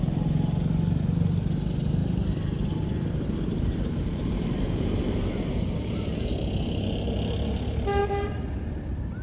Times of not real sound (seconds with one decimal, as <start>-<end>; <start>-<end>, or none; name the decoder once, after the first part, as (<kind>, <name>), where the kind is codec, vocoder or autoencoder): 2.0-6.3 (vocoder, BigVGAN v2); 8.0-8.7